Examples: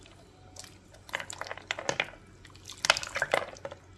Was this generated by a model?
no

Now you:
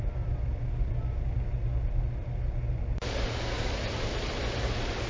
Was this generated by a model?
no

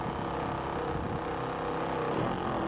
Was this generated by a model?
no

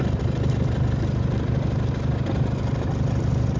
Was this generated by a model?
no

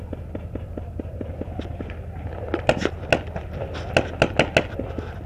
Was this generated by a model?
no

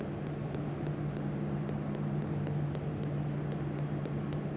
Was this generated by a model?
no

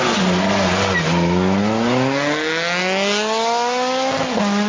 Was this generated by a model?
no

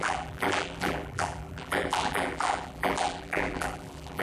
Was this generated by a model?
yes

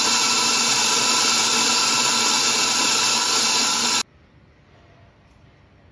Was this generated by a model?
no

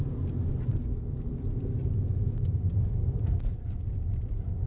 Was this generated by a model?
no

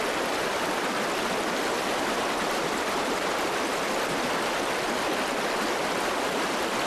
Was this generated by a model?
no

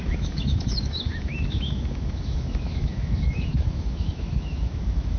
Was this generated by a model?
yes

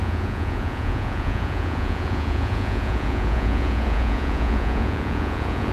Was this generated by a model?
yes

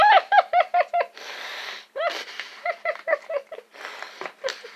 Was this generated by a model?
yes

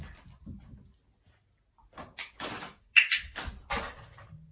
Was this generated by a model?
no